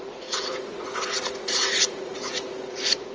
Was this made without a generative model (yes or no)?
no